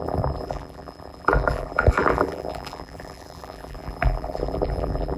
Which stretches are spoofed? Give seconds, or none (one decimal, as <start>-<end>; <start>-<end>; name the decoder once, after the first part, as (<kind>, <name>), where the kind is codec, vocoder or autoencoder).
0.0-5.2 (vocoder, BigVGAN v2)